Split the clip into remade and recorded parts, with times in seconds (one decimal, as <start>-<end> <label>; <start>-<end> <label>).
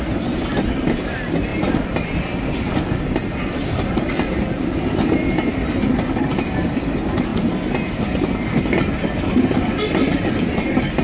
0.0-11.0 recorded